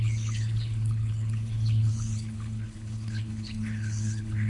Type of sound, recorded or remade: remade